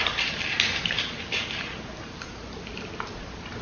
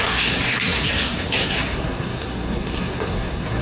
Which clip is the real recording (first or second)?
first